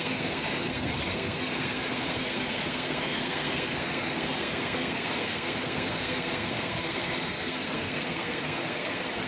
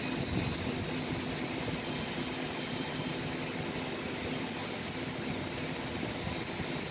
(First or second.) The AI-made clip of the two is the first